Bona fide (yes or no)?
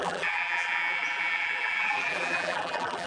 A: no